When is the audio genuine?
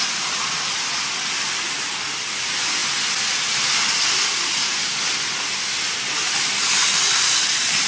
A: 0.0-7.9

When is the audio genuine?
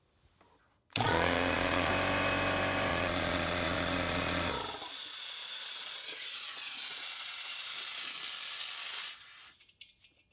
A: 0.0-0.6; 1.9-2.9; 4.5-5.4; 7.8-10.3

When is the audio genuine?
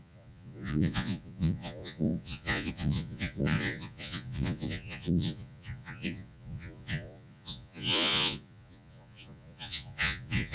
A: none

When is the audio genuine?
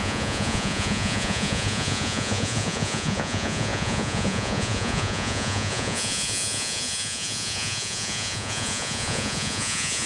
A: none